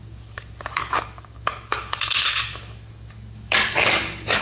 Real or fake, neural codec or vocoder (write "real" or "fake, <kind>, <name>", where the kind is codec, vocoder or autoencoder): fake, codec, DAC